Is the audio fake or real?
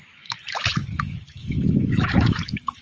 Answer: fake